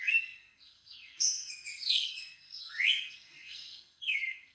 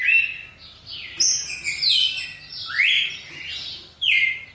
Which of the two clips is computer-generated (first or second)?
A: first